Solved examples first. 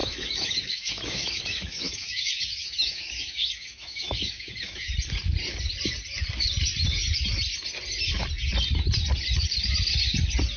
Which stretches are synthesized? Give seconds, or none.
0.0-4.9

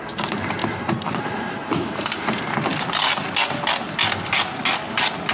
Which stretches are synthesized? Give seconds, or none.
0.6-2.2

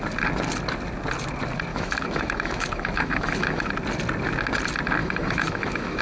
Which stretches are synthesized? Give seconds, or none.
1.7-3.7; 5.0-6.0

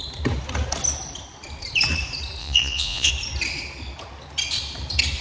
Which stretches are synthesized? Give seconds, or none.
2.4-3.1